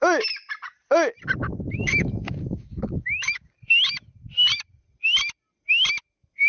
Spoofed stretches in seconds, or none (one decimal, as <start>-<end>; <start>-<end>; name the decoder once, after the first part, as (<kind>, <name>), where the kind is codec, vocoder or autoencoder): 1.8-3.5 (autoencoder, DAC-VAE)